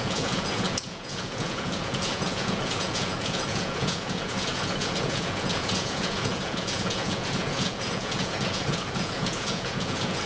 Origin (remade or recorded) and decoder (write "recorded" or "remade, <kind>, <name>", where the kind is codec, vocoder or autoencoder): remade, vocoder, Vocos